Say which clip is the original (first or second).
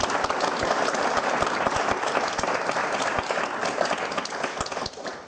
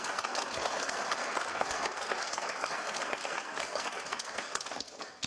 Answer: first